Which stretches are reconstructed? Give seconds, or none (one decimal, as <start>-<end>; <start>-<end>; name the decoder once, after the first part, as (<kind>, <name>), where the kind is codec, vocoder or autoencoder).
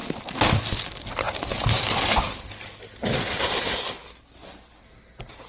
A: none